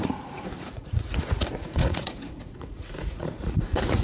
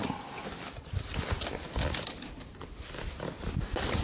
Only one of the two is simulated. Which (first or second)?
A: first